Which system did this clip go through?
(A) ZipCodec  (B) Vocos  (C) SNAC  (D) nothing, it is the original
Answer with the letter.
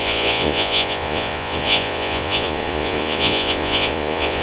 B